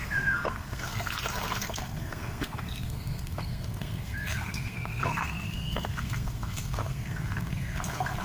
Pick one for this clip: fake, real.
fake